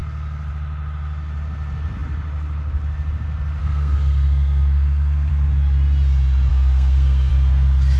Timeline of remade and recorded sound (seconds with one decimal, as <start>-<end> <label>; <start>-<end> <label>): 0.0-3.6 recorded; 3.6-5.3 remade; 5.3-6.5 recorded; 6.5-7.3 remade; 7.3-8.0 recorded